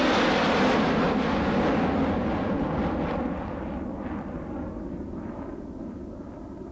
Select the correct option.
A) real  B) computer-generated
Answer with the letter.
A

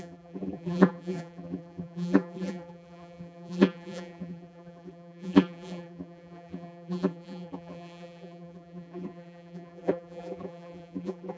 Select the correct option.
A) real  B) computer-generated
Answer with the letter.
B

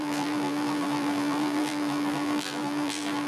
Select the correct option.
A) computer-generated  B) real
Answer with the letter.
A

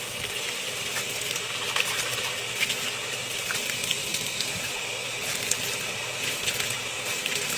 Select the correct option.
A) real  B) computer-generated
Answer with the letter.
A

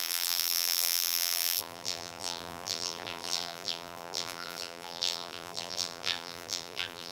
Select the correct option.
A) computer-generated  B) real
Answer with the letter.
A